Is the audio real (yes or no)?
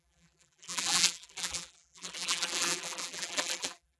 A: no